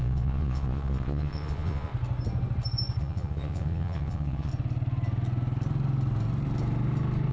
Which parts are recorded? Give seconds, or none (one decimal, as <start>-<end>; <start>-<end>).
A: 1.9-3.0; 4.5-7.3